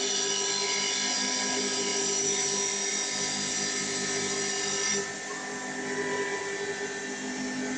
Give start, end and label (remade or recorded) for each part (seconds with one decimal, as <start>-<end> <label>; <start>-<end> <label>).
0.0-7.8 recorded